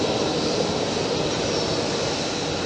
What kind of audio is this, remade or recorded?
recorded